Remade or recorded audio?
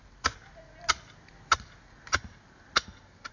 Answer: recorded